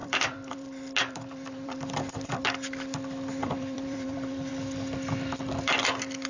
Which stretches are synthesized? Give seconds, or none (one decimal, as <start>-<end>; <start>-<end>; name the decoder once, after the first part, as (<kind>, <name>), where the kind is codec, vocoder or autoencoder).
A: 0.0-2.4 (vocoder, BigVGAN v2); 3.4-4.5